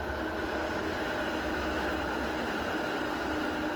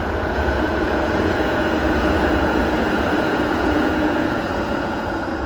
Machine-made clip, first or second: second